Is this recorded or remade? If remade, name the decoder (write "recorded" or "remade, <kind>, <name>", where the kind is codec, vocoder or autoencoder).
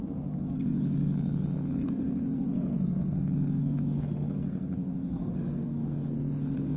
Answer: remade, codec, SNAC